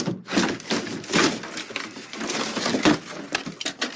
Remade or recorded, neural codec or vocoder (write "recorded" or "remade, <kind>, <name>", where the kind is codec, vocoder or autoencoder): recorded